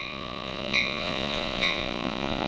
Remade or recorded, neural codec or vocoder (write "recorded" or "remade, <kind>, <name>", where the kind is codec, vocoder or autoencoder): remade, vocoder, Vocos